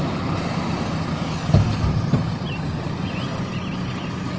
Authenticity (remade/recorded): recorded